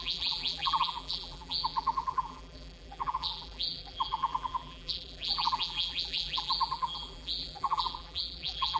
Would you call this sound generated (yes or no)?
yes